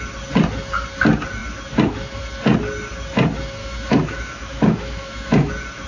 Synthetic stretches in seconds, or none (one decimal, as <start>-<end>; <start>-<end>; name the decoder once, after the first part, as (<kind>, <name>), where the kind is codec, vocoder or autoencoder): 3.6-5.5 (autoencoder, DAC-VAE)